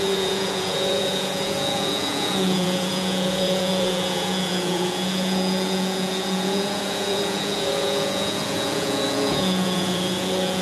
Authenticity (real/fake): fake